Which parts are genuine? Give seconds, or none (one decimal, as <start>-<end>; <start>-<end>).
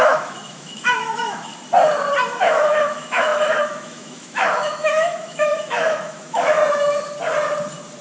1.5-2.4; 6.6-8.0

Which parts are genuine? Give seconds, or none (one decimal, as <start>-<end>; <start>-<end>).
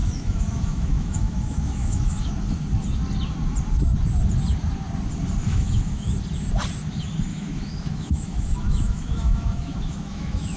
2.3-5.5; 6.1-7.3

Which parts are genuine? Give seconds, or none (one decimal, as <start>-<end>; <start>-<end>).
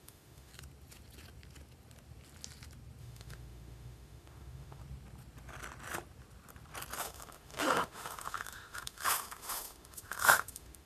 0.5-3.0; 4.8-7.0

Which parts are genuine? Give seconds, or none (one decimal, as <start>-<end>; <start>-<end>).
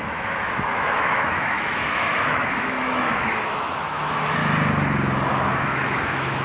4.4-5.3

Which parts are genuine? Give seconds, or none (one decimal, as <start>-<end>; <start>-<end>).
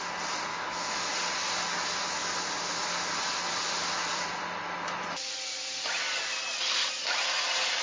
0.0-0.5; 1.1-7.8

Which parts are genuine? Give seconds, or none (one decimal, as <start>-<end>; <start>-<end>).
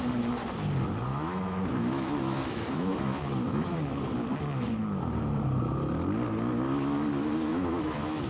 0.0-1.1; 4.0-7.5